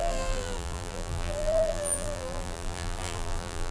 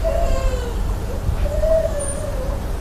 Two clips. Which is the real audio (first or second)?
second